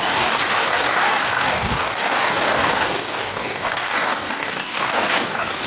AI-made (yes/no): yes